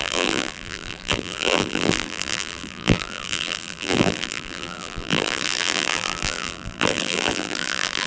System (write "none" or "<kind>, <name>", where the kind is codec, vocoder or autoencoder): vocoder, BigVGAN v2